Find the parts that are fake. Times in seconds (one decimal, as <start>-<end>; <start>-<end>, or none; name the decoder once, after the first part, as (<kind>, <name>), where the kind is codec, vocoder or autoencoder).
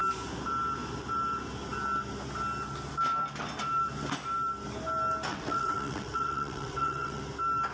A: 5.3-7.2 (vocoder, WaveNeXt)